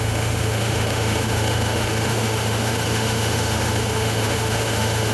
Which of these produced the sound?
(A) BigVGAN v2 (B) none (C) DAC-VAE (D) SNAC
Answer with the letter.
C